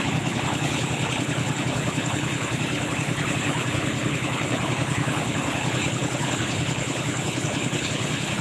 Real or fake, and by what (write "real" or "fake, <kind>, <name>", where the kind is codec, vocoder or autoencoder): fake, codec, HILCodec